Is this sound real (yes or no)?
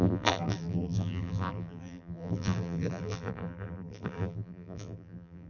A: no